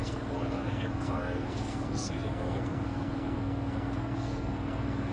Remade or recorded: remade